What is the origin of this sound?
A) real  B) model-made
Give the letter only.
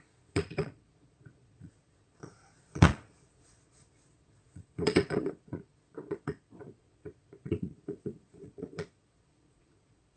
B